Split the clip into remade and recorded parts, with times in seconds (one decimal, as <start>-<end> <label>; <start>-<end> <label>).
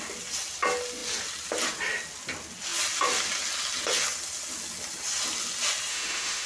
0.0-5.9 recorded; 5.9-6.5 remade